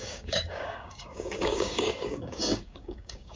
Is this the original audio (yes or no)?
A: no